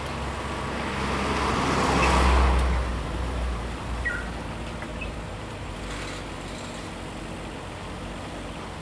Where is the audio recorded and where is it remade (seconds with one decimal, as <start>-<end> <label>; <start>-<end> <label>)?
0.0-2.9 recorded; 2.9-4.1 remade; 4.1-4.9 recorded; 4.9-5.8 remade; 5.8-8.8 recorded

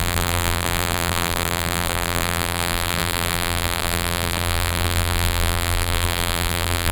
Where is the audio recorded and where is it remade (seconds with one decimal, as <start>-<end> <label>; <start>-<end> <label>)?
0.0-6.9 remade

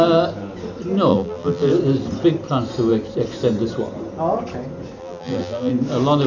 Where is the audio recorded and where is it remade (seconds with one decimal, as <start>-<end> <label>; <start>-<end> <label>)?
0.0-1.1 recorded; 1.1-1.7 remade; 1.7-5.0 recorded; 5.0-5.7 remade; 5.7-6.3 recorded